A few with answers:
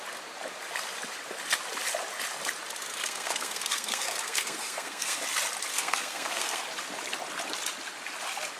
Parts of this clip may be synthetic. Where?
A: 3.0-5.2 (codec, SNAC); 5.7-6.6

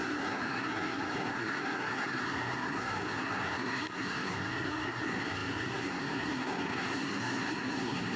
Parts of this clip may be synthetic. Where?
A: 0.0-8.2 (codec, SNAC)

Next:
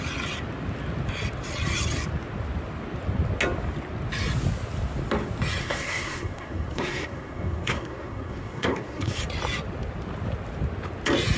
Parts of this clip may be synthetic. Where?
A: 5.6-9.2 (codec, SNAC)